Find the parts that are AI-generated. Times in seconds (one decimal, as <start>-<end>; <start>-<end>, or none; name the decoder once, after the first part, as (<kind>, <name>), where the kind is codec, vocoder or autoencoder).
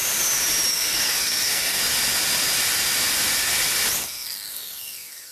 0.7-1.8 (codec, SNAC); 4.0-5.3